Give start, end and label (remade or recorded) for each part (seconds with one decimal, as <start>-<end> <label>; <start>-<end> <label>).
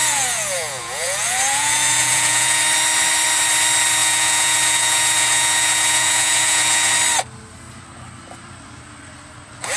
0.0-2.6 remade; 2.6-4.0 recorded; 4.0-6.9 remade; 6.9-9.8 recorded